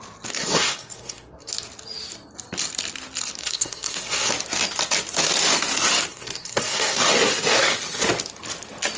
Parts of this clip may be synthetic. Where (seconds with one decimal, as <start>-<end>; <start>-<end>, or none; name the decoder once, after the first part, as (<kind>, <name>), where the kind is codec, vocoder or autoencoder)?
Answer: 0.4-1.5 (codec, SNAC); 3.4-4.3; 6.1-7.0